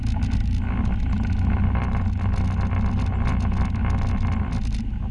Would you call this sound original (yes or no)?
yes